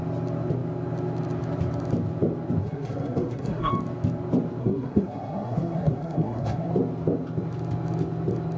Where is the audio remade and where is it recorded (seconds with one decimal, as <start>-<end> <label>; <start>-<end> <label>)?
0.0-2.6 recorded; 2.6-3.7 remade; 3.7-4.6 recorded; 4.6-6.7 remade; 6.7-8.6 recorded